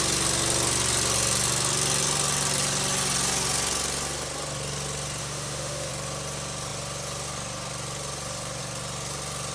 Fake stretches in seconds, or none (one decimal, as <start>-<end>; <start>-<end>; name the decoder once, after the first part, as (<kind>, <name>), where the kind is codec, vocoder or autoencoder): 5.2-5.9 (autoencoder, DAC-VAE)